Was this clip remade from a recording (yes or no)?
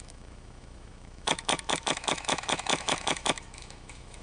yes